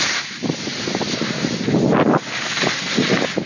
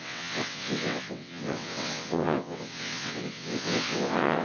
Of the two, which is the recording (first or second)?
first